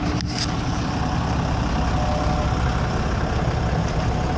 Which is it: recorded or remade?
recorded